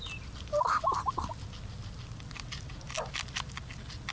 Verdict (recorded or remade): recorded